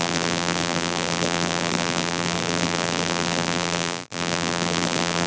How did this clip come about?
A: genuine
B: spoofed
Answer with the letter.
B